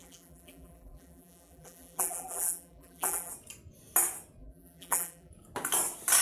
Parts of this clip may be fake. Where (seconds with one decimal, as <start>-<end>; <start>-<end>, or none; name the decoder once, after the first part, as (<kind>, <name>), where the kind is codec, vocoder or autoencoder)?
0.0-3.3 (vocoder, BigVGAN v2); 4.4-5.3